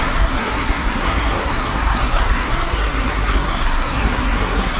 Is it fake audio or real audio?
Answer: fake